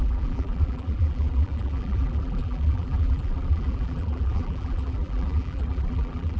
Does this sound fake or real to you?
fake